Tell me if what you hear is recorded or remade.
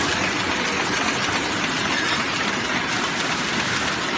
recorded